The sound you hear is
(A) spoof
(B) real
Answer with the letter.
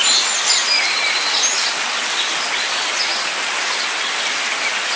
B